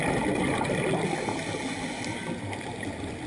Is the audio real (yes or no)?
yes